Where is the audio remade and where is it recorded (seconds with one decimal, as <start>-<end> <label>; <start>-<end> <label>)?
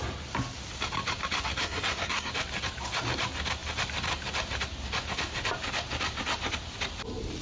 0.0-1.6 recorded; 1.6-2.3 remade; 2.3-7.4 recorded